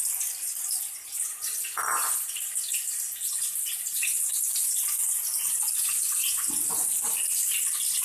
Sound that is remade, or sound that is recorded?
recorded